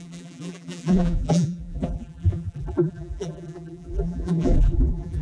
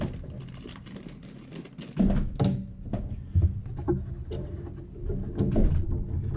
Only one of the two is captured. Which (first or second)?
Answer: second